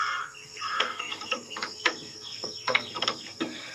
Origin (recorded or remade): remade